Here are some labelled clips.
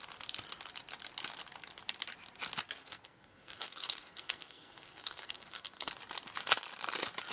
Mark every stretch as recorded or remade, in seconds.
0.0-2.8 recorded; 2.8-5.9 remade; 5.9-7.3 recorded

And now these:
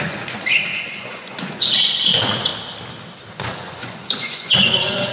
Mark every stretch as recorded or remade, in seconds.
0.0-2.5 remade; 2.5-3.3 recorded; 3.3-5.1 remade

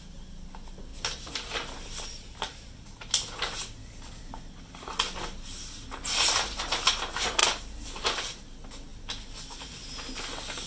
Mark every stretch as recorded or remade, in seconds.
0.0-3.8 recorded; 3.8-4.3 remade; 4.3-10.7 recorded

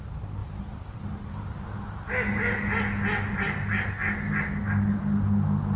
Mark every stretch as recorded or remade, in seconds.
0.0-5.8 recorded

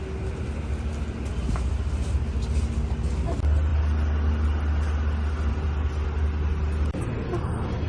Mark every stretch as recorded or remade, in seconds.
0.0-7.9 recorded